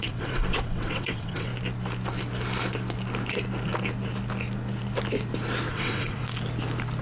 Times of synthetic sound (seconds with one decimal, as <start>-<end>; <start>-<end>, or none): 0.0-1.5; 5.7-6.2